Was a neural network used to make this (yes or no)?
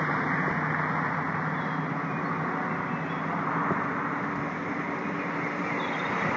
no